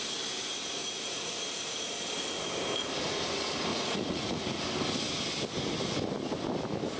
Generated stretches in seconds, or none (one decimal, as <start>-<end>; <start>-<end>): 0.8-1.4; 3.7-4.6